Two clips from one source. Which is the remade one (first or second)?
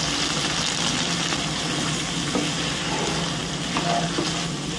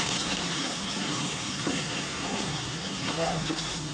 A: second